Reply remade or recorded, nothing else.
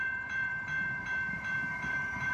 remade